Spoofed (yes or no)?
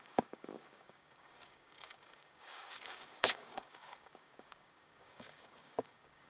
yes